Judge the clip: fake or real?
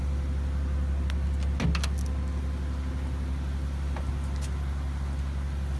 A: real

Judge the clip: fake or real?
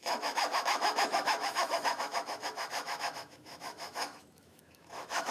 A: fake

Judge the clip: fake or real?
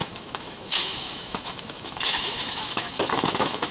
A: fake